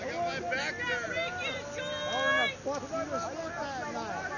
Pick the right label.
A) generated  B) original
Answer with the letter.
B